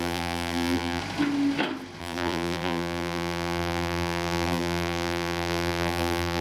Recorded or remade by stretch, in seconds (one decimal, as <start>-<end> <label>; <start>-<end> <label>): 0.0-1.0 remade; 1.0-2.0 recorded; 2.0-6.4 remade